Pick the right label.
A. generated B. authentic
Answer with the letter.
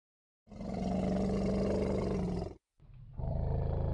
B